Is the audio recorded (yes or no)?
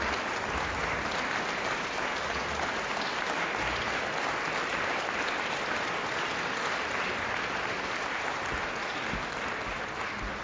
yes